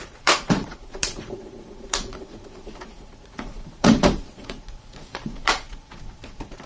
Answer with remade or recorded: remade